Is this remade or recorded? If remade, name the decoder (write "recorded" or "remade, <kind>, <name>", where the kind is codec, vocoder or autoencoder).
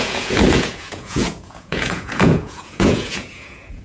remade, vocoder, Vocos